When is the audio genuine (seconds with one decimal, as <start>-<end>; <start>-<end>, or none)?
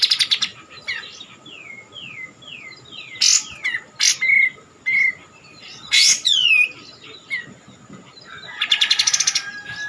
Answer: 0.0-5.5; 6.5-9.9